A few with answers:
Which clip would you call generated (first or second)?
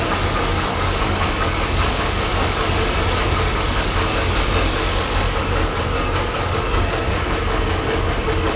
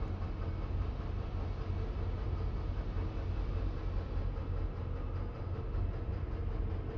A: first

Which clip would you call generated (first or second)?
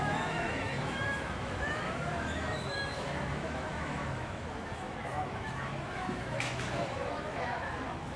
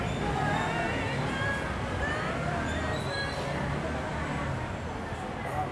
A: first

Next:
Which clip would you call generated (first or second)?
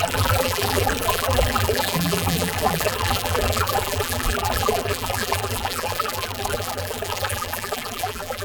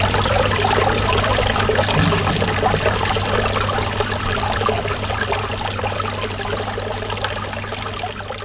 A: first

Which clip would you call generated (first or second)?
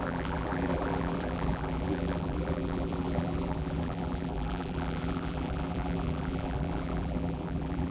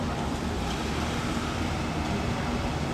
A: first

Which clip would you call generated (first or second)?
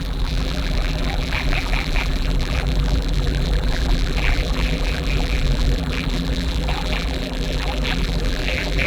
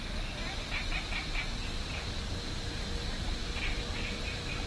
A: first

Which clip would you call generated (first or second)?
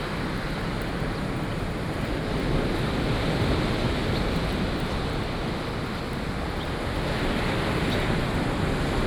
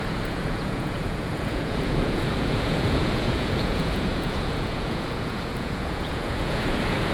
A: second